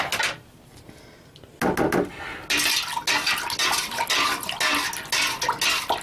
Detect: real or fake real